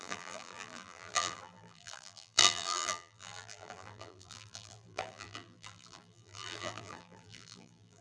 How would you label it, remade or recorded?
remade